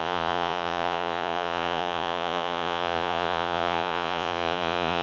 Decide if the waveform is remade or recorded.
remade